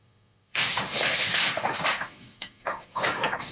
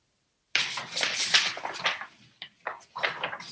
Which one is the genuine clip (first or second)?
second